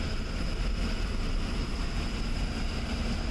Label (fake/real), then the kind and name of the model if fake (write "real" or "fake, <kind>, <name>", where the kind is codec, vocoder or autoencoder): real